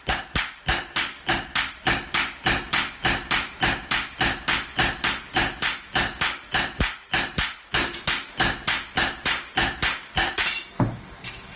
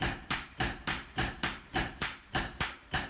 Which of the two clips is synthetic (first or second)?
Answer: second